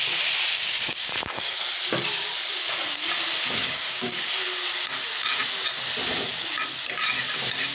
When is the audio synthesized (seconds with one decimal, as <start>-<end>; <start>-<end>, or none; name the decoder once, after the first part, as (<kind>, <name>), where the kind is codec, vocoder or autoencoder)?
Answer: 0.5-1.6 (codec, DAC); 3.6-4.3